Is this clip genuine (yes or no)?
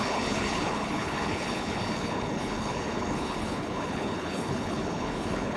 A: no